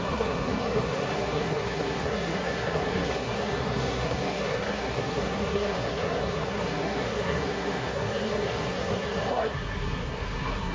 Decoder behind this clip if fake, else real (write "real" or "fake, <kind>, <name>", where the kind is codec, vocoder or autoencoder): fake, codec, SNAC